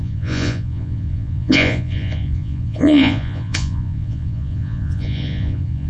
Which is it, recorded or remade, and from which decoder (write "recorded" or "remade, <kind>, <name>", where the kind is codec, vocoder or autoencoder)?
remade, vocoder, Vocos